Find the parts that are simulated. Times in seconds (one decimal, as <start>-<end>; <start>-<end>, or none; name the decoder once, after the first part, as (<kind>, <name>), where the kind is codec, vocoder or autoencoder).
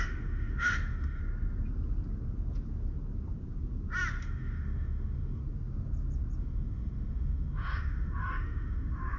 0.0-1.2 (autoencoder, DAC-VAE); 4.2-5.4; 6.4-9.2